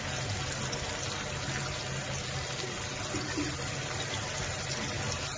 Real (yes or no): yes